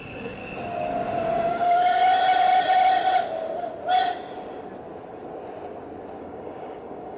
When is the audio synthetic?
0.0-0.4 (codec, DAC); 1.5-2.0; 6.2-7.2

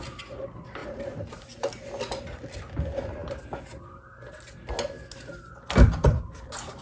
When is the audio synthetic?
none

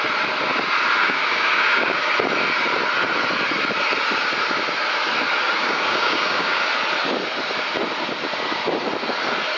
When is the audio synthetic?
1.0-2.1 (codec, DAC); 5.6-6.6

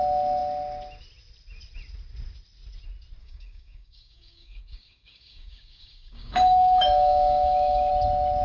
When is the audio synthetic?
3.2-7.9 (codec, DAC)